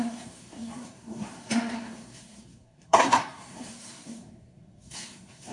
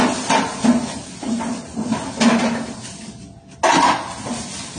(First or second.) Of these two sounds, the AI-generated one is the first